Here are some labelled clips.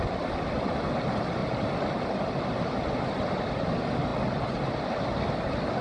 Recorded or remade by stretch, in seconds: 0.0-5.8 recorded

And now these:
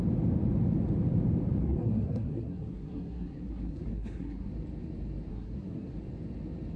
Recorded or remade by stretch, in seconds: 0.0-1.6 recorded; 1.6-4.5 remade; 4.5-5.3 recorded; 5.3-5.9 remade; 5.9-6.8 recorded

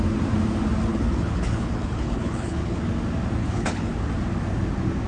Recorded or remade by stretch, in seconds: 0.0-0.9 recorded; 0.9-2.8 remade; 2.8-3.4 recorded; 3.4-3.9 remade; 3.9-5.1 recorded

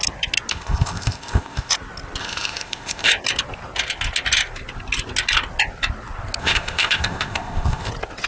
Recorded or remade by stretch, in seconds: 0.0-0.5 recorded; 0.5-1.7 remade; 1.7-2.2 recorded; 2.2-3.1 remade; 3.1-6.4 recorded; 6.4-7.9 remade; 7.9-8.3 recorded

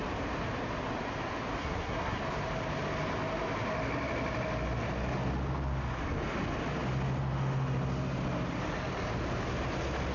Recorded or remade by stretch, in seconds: 0.0-1.6 recorded; 1.6-2.2 remade; 2.2-10.1 recorded